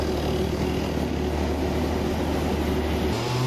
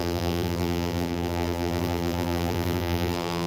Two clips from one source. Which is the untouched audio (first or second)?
first